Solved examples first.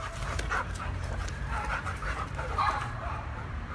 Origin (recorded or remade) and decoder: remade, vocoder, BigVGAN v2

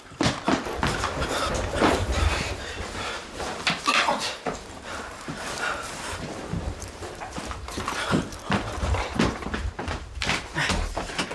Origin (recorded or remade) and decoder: remade, vocoder, BigVGAN v2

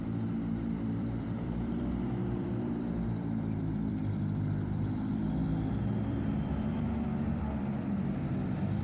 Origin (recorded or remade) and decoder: remade, vocoder, BigVGAN v2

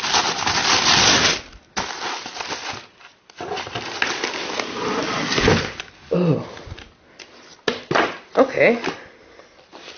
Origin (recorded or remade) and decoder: recorded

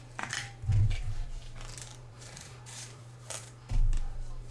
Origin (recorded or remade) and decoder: remade, vocoder, BigVGAN v2